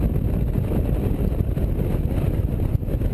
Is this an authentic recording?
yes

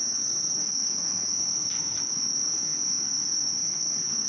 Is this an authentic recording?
no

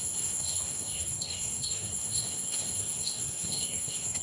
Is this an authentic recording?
no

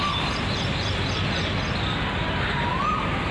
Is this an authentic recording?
yes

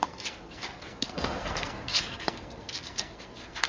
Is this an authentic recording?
no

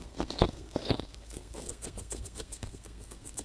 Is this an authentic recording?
no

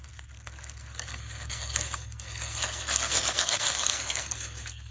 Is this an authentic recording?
no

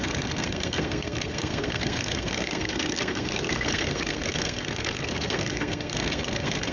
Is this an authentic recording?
no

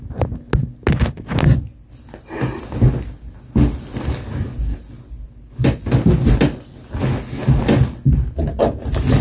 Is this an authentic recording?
yes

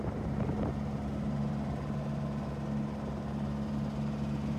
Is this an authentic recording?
yes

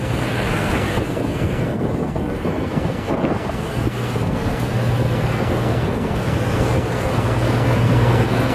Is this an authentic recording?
no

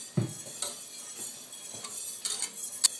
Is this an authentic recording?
yes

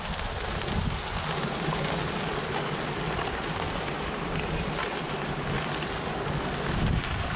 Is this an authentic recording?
yes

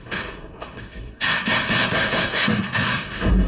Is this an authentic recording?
no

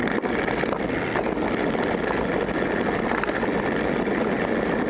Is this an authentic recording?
yes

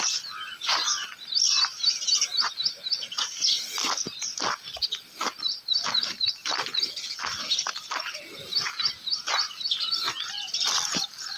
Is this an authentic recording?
yes